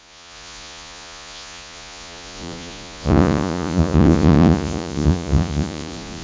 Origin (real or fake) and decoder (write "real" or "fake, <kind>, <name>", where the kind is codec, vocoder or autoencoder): fake, vocoder, Vocos